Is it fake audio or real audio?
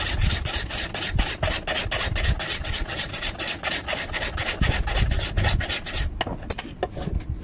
real